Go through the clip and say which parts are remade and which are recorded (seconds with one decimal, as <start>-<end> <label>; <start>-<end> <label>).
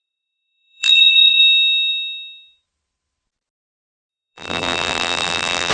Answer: 0.0-1.4 remade; 1.4-4.1 recorded; 4.1-5.7 remade